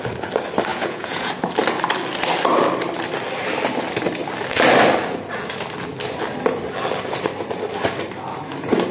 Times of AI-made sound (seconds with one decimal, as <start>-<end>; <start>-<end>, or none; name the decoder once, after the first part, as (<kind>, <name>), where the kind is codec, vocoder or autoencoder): 0.7-1.3 (vocoder, Vocos)